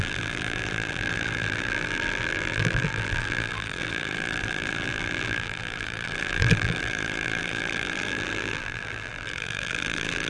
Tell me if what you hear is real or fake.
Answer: fake